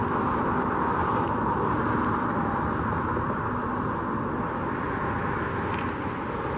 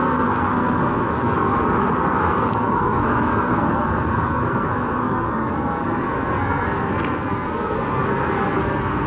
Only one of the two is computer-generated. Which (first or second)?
second